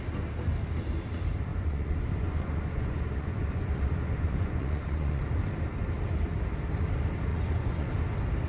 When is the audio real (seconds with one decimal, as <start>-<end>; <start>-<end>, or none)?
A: 0.0-1.5; 5.2-7.3; 7.9-8.5